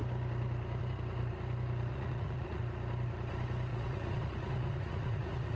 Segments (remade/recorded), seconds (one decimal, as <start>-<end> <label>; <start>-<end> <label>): 0.0-1.9 recorded; 1.9-2.6 remade; 2.6-3.7 recorded; 3.7-5.6 remade